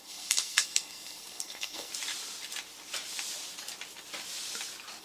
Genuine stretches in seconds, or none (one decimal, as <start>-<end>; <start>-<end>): 1.9-5.0